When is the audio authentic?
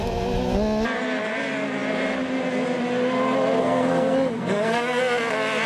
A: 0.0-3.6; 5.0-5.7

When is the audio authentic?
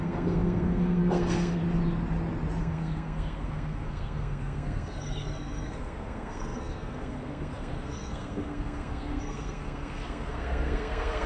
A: 1.6-2.6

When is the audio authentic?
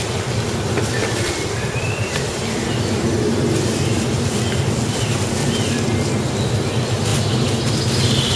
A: 0.0-8.4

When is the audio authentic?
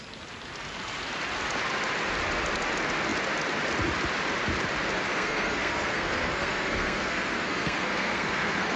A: 0.0-5.1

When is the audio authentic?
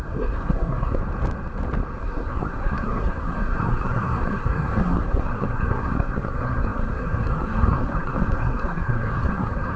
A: 1.0-2.0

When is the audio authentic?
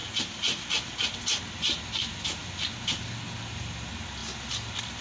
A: 0.0-5.0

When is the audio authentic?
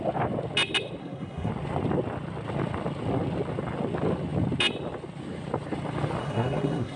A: 0.0-1.0; 1.5-6.2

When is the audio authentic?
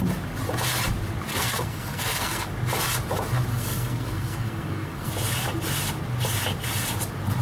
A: 0.0-1.3; 2.5-3.5; 5.1-7.4